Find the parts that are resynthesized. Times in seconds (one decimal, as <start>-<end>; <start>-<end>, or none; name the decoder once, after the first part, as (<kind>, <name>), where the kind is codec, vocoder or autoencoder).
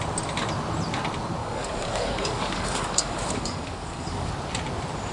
1.4-4.3 (codec, DAC)